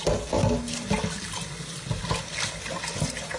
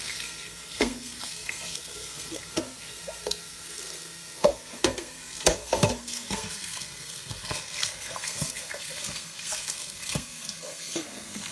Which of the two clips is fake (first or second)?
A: second